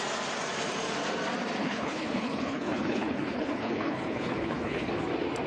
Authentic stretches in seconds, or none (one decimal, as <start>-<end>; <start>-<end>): 0.0-1.6; 4.9-5.5